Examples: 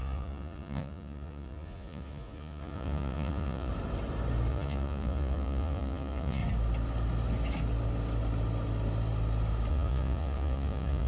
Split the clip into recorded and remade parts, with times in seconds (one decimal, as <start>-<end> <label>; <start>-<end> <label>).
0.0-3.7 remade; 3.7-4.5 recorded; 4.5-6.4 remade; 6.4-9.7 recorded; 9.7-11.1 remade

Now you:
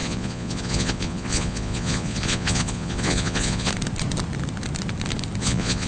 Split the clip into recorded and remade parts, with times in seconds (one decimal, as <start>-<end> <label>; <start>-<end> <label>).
0.0-3.7 remade; 3.7-5.4 recorded; 5.4-5.9 remade

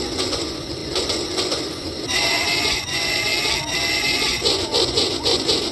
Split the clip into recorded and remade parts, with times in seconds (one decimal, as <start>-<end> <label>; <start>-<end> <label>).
0.0-3.3 remade; 3.3-3.9 recorded; 3.9-5.7 remade